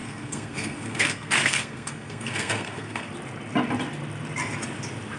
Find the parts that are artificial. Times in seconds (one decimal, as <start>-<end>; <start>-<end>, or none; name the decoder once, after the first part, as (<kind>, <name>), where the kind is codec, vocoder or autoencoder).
0.0-3.1 (codec, SNAC)